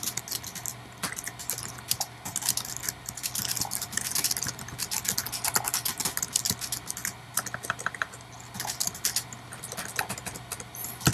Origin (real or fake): real